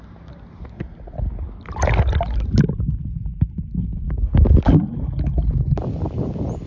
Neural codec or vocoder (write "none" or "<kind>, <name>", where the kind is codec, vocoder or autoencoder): none